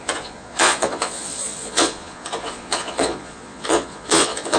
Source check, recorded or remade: remade